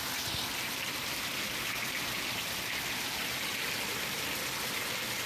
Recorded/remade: recorded